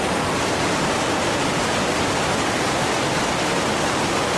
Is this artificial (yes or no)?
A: no